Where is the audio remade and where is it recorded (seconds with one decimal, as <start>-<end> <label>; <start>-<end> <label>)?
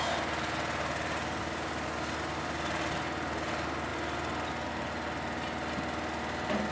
0.0-6.7 recorded